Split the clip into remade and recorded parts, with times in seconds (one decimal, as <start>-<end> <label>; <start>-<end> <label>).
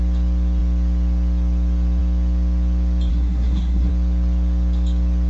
0.0-3.1 recorded; 3.1-3.9 remade; 3.9-5.3 recorded